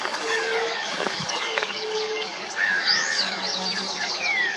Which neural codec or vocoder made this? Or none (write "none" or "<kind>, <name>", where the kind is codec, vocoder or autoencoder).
codec, DAC